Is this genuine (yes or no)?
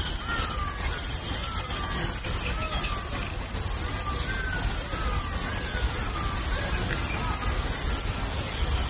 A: yes